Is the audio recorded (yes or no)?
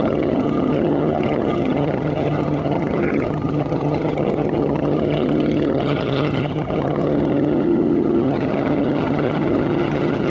no